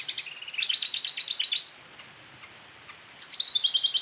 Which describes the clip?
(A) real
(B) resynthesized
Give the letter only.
A